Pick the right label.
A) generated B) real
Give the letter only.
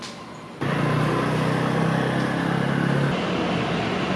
B